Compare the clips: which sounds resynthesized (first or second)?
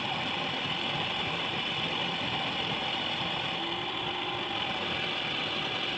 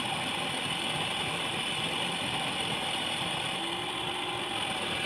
first